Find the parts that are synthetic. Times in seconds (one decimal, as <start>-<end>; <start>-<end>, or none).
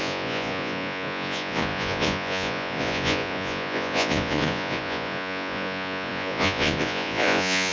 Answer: 0.0-7.7